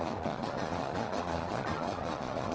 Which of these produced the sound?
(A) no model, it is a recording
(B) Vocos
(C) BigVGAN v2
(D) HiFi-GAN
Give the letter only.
B